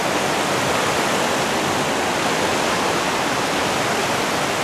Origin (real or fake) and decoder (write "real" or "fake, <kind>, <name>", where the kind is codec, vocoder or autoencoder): real